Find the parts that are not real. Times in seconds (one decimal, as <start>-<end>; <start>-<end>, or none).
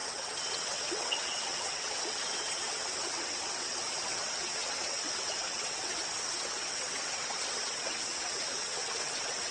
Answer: 0.0-9.5